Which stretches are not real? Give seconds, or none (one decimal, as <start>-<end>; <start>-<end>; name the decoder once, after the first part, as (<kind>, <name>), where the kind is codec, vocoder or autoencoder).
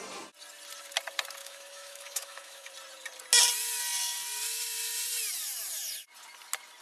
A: 1.4-2.7 (autoencoder, DAC-VAE)